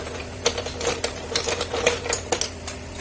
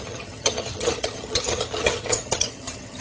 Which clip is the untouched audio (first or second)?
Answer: first